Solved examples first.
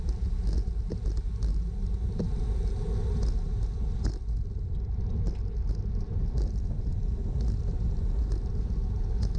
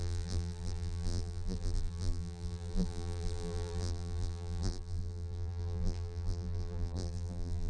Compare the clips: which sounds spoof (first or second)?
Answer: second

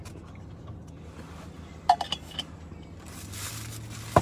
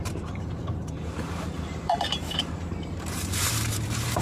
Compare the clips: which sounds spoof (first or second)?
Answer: second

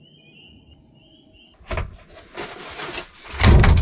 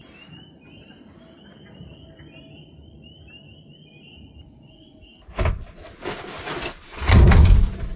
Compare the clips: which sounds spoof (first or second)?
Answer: second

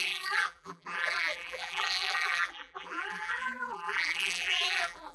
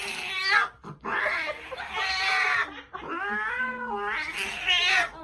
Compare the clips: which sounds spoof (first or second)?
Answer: first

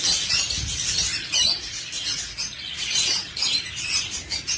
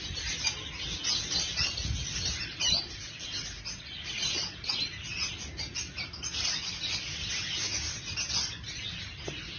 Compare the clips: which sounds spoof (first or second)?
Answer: first